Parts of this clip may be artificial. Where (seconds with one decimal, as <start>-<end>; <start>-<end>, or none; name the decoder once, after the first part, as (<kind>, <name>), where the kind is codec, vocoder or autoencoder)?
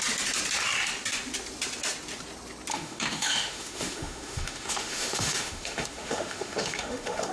2.7-7.3 (autoencoder, DAC-VAE)